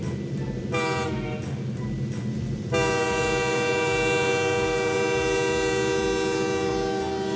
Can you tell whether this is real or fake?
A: real